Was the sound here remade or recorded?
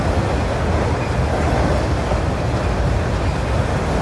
recorded